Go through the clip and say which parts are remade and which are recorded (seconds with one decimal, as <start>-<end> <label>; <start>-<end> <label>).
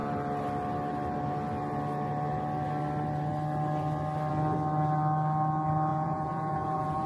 0.0-5.9 recorded; 5.9-7.1 remade